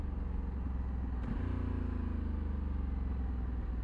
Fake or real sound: real